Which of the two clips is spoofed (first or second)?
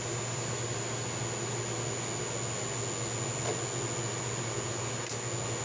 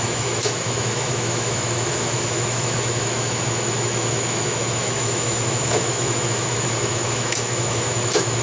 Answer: second